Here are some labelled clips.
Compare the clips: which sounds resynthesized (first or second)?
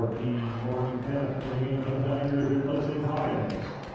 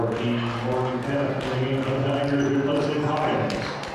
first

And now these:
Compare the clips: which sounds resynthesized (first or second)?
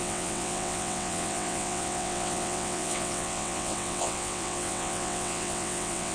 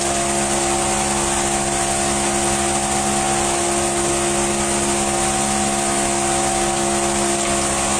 first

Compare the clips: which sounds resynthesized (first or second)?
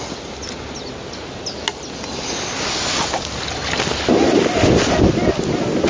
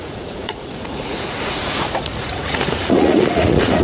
second